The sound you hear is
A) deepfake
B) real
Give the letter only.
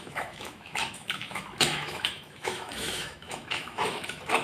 A